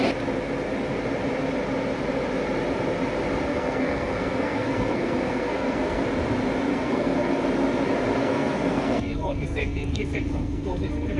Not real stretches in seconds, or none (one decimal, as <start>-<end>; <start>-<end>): 3.5-6.0; 6.7-7.4; 8.2-11.2